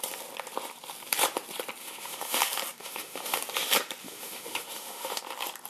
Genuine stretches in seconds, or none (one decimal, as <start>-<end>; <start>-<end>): 0.0-1.8; 2.4-2.8; 3.4-4.0; 5.2-5.7